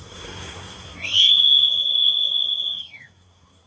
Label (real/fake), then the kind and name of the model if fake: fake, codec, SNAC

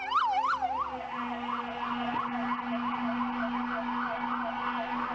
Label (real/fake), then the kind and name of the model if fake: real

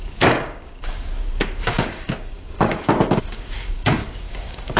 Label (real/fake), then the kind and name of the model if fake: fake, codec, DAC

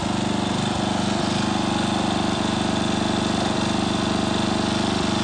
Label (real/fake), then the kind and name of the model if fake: real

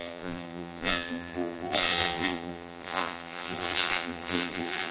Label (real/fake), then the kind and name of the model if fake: fake, vocoder, BigVGAN v2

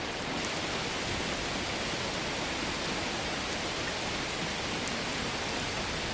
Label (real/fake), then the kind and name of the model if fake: real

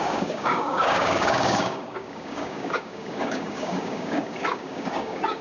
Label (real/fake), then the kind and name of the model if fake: fake, codec, DAC